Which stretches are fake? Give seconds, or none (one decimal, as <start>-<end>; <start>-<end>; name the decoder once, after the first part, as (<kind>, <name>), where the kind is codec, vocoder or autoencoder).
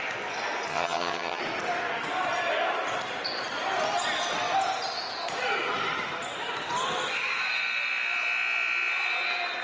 0.7-1.4 (vocoder, HiFi-GAN)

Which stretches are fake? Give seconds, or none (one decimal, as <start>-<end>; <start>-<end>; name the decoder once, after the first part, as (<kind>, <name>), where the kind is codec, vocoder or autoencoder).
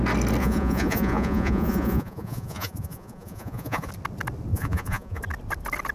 0.4-3.9 (vocoder, Vocos); 4.5-5.2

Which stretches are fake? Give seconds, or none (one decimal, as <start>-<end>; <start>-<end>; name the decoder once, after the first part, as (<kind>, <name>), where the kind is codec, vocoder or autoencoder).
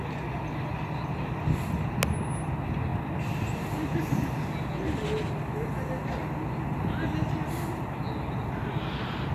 none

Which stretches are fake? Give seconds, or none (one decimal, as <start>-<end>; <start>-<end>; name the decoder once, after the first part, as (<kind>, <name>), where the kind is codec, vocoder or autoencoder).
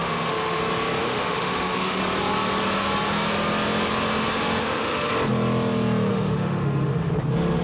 0.0-0.6 (autoencoder, DAC-VAE); 1.0-2.0; 4.6-5.1; 6.1-7.1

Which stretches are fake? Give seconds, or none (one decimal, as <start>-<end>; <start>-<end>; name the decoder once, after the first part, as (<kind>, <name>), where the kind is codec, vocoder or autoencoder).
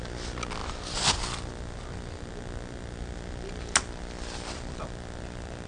none